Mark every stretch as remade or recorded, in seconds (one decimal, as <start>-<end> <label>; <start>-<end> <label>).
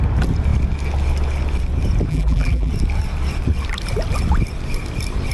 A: 0.0-2.1 recorded; 2.1-2.7 remade; 2.7-5.3 recorded